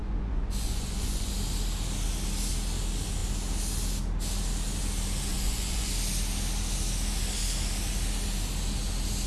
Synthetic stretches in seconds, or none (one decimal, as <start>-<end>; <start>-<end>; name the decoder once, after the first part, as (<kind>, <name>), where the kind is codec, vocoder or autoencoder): 0.0-1.3 (vocoder, Vocos); 5.3-5.9